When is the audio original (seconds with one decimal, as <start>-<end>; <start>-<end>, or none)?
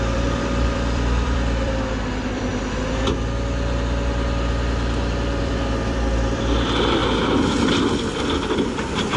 2.5-5.4; 7.0-8.5